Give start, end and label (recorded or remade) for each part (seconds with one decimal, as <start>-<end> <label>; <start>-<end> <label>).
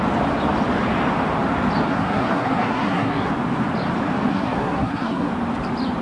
0.0-1.9 recorded; 1.9-3.3 remade; 3.3-4.3 recorded; 4.3-5.3 remade; 5.3-6.0 recorded